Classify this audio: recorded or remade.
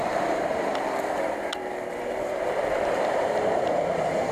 remade